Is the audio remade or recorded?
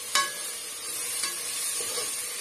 recorded